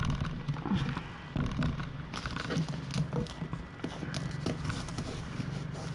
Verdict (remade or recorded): recorded